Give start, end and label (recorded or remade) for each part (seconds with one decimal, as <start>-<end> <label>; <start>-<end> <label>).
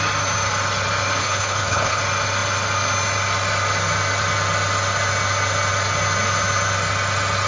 0.0-1.2 recorded; 1.2-2.0 remade; 2.0-7.5 recorded